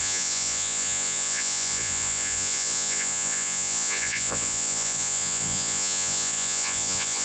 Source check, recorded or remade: remade